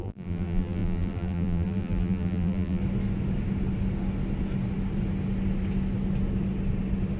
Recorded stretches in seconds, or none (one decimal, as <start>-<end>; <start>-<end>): 2.8-7.2